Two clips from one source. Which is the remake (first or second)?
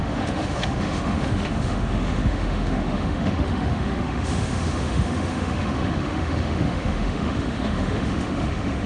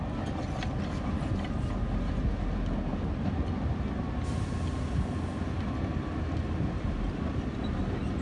first